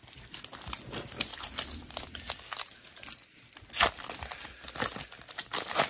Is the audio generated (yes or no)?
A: no